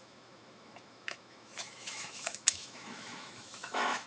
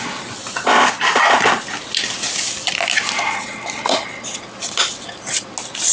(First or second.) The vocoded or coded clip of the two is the first